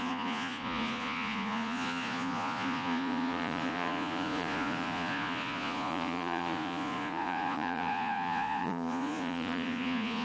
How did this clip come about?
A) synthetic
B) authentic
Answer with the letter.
A